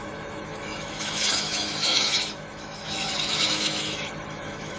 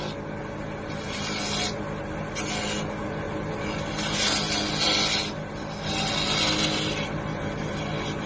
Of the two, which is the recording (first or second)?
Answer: second